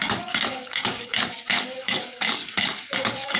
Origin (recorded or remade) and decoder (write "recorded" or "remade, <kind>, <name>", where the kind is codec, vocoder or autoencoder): remade, codec, DAC